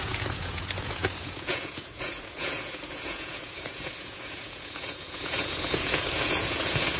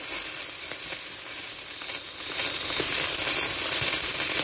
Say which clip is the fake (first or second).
first